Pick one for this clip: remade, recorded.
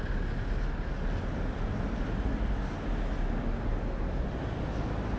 recorded